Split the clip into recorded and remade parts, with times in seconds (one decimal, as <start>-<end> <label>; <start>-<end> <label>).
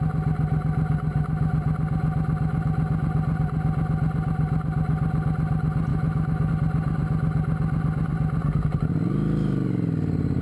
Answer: 0.0-5.9 recorded; 5.9-6.5 remade; 6.5-10.4 recorded